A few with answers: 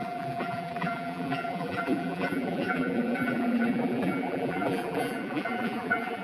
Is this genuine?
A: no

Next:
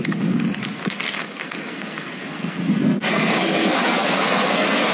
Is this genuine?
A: no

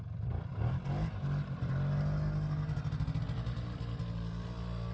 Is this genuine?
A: yes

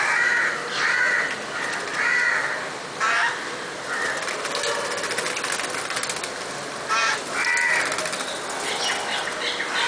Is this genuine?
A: yes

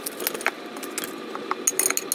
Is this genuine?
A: yes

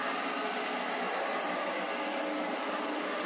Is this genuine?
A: yes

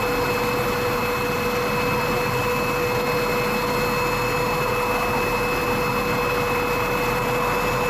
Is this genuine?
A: yes